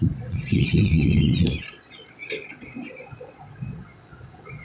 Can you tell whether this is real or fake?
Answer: fake